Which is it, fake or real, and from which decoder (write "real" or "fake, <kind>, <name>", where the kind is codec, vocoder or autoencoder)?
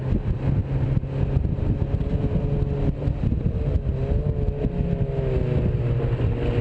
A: real